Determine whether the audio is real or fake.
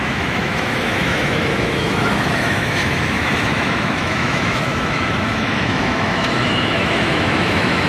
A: fake